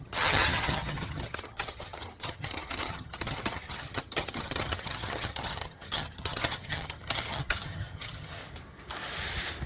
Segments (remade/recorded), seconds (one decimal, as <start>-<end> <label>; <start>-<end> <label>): 0.0-8.4 remade; 8.4-9.7 recorded